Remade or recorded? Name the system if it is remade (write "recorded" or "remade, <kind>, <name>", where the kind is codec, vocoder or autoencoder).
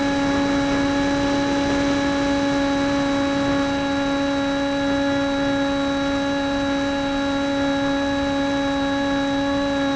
recorded